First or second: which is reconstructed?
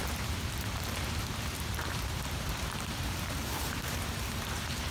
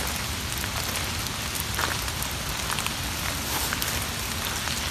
first